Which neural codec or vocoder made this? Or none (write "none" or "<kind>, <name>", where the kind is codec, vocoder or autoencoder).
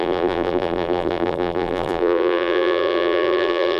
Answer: vocoder, BigVGAN v2